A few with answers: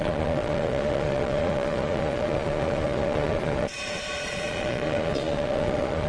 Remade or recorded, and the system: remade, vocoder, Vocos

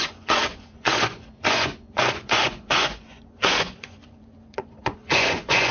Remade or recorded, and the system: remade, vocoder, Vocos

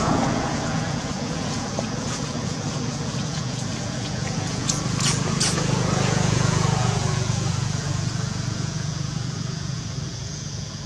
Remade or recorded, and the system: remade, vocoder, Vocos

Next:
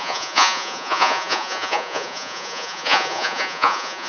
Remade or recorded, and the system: remade, vocoder, Vocos